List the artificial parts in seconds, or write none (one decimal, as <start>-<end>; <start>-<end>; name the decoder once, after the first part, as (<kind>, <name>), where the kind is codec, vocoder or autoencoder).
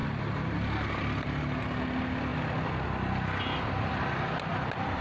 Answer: 0.0-1.4 (vocoder, BigVGAN v2); 2.3-5.0